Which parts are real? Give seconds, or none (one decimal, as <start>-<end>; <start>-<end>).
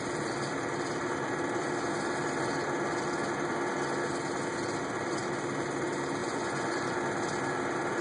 0.0-6.2; 7.0-8.0